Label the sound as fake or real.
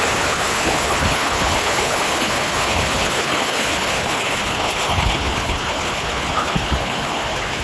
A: fake